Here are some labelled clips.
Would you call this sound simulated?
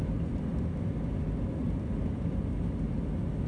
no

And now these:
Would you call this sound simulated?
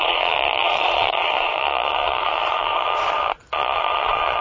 yes